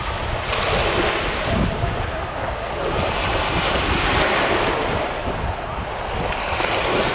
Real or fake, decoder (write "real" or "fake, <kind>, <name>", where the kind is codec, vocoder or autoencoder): real